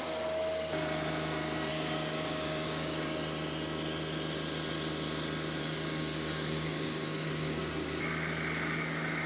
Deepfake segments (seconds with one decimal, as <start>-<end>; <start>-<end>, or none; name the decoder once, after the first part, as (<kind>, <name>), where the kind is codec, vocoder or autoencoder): 1.7-3.2 (codec, DAC); 5.6-7.6